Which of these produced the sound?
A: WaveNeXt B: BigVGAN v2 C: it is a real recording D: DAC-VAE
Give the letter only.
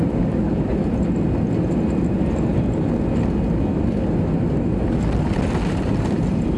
C